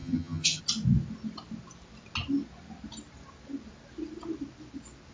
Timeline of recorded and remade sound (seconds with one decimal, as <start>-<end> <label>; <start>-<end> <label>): 0.0-0.6 remade; 0.6-5.1 recorded